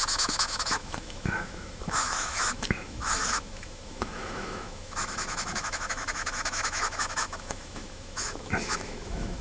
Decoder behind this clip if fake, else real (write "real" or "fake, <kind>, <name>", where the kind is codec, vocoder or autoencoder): fake, autoencoder, DAC-VAE